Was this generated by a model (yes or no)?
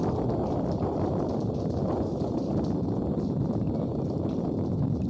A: yes